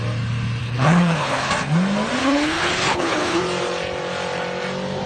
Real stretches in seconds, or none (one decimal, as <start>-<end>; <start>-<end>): 0.0-0.6; 1.5-2.2; 3.4-5.1